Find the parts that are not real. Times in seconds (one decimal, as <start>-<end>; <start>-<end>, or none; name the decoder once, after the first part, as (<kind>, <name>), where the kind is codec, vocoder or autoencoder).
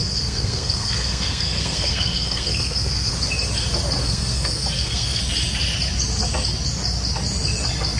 0.0-3.1 (codec, SNAC); 4.0-5.2